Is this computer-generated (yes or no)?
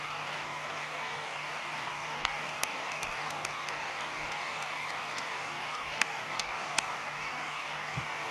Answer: yes